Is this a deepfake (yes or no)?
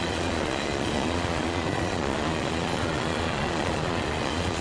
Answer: yes